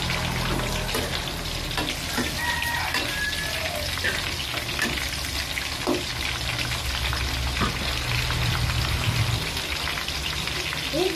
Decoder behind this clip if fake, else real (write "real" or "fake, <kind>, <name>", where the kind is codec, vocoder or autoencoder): real